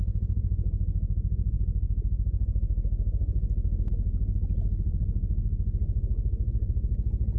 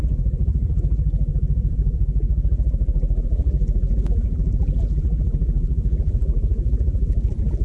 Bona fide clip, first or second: first